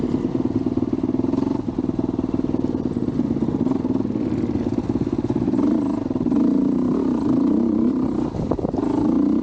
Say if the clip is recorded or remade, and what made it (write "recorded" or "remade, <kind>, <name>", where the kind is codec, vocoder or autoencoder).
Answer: recorded